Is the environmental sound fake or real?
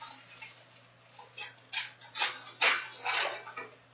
real